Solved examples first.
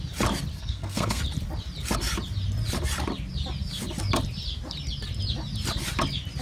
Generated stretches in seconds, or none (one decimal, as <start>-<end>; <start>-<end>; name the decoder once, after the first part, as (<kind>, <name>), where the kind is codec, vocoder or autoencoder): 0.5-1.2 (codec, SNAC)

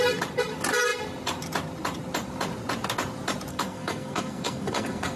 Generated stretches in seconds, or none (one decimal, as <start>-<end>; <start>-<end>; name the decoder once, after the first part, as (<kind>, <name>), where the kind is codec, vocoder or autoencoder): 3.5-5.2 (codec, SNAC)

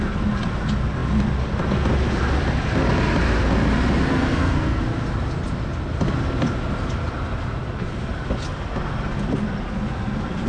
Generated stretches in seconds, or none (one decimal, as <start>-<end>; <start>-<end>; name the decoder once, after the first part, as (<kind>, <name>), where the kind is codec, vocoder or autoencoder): 4.1-4.8 (codec, SNAC)

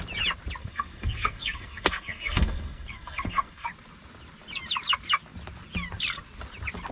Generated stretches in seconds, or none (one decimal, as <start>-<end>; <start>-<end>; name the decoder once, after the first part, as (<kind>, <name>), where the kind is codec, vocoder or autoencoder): 0.6-3.7 (codec, SNAC)

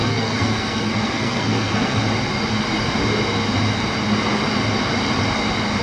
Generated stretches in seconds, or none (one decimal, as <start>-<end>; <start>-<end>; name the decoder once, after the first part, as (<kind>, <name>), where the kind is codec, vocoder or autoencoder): 0.0-2.0 (codec, SNAC)

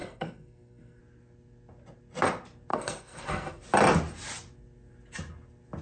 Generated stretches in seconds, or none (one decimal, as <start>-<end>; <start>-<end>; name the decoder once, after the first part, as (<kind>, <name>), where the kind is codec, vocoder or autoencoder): 0.0-1.0 (codec, SNAC); 2.7-3.6